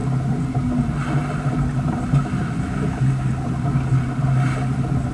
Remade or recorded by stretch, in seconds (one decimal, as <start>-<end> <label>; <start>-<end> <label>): 0.0-5.1 recorded